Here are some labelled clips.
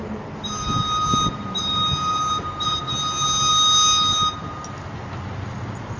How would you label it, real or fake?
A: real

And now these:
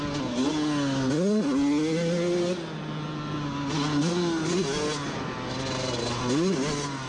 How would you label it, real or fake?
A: real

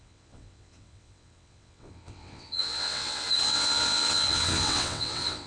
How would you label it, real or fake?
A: fake